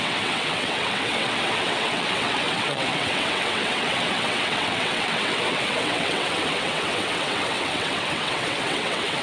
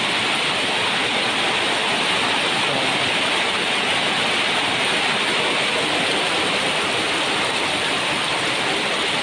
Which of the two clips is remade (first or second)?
first